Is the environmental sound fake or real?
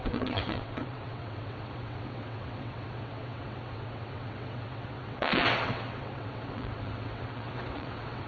fake